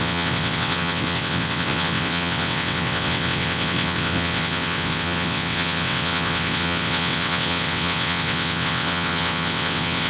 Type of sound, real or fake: fake